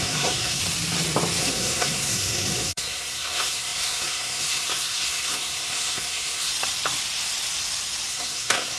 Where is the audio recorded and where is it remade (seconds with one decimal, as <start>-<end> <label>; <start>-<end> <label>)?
0.0-0.6 remade; 0.6-1.4 recorded; 1.4-6.5 remade; 6.5-8.1 recorded; 8.1-8.8 remade